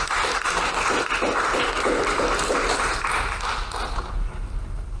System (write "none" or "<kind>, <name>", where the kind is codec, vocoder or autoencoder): none